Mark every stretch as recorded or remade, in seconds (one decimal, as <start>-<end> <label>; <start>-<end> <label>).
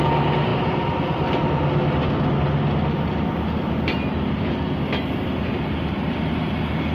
0.0-6.9 recorded